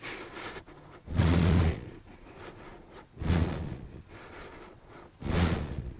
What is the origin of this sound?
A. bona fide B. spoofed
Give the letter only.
B